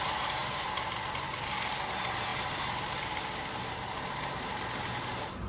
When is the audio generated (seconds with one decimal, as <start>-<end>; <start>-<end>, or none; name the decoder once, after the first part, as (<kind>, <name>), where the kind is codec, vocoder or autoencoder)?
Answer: none